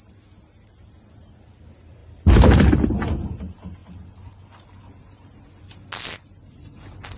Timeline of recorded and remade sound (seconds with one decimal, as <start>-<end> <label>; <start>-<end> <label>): 0.0-7.2 recorded